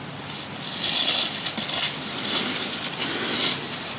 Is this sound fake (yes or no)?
no